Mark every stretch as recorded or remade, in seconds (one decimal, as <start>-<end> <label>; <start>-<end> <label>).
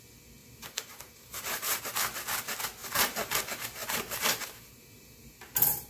0.0-0.4 recorded; 0.4-1.8 remade; 1.8-2.8 recorded; 2.8-3.3 remade; 3.3-3.8 recorded; 3.8-5.9 remade